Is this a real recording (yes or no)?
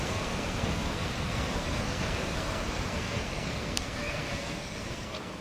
no